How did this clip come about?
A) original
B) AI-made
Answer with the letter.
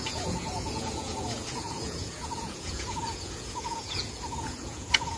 B